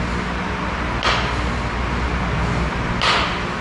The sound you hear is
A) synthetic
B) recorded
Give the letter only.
B